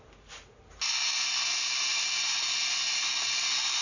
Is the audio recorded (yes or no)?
yes